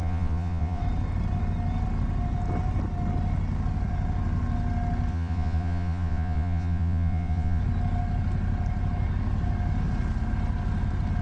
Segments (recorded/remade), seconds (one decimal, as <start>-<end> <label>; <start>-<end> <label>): 0.0-0.8 remade; 0.8-5.1 recorded; 5.1-7.6 remade; 7.6-11.2 recorded